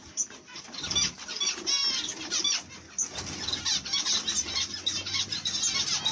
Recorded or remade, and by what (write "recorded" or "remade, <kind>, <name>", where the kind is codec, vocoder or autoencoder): recorded